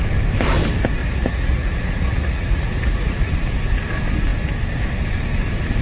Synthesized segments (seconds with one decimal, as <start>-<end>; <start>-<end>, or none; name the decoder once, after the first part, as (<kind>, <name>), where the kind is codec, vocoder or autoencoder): 1.0-3.3 (vocoder, Vocos)